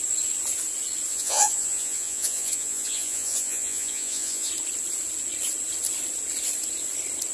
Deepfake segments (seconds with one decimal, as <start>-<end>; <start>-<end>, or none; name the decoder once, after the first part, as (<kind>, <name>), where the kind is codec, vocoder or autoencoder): 1.1-4.5 (vocoder, Vocos)